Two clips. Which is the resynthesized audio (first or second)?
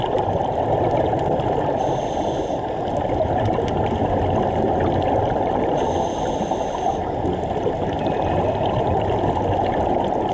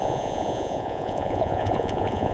second